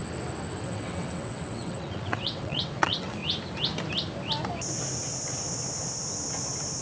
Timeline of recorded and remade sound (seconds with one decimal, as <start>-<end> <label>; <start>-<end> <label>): 0.0-0.6 recorded; 0.6-3.2 remade; 3.2-6.8 recorded